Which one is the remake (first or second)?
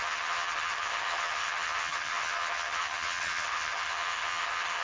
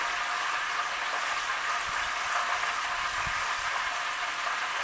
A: first